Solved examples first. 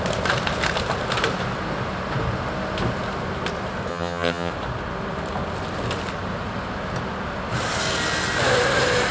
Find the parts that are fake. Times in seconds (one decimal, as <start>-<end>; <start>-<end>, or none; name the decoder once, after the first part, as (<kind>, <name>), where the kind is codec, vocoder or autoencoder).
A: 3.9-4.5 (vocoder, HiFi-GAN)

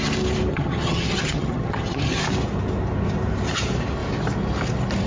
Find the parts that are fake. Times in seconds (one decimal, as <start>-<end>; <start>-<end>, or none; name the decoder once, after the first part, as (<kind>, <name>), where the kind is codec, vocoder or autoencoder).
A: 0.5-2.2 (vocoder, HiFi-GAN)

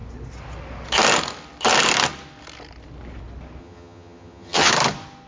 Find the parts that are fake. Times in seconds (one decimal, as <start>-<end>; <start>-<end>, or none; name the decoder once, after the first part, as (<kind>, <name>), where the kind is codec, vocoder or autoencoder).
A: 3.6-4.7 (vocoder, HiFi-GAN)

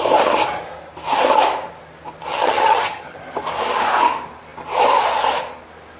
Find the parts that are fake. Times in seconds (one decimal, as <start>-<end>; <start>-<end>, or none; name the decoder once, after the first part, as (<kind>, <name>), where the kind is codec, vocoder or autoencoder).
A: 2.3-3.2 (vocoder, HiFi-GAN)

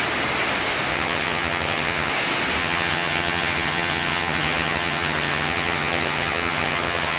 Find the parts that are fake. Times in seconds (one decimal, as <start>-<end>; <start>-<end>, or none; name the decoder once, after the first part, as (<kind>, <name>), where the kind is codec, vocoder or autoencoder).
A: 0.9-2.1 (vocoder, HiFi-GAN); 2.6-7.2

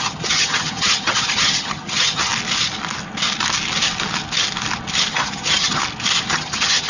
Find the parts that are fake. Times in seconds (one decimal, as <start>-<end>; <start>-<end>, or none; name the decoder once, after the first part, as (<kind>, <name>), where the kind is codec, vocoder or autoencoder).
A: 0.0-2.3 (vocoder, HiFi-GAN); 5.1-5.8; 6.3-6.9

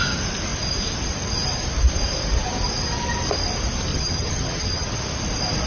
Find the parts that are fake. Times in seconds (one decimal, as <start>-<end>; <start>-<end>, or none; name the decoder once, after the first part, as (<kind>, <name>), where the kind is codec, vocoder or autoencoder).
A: 3.9-5.0 (vocoder, HiFi-GAN)

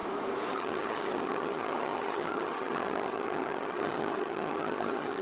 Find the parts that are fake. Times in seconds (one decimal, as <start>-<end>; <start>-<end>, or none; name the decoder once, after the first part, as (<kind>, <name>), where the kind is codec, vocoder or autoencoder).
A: 0.5-5.2 (vocoder, HiFi-GAN)